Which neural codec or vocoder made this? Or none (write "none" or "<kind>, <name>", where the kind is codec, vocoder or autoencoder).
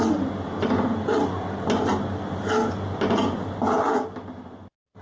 none